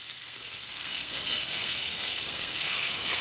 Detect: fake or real fake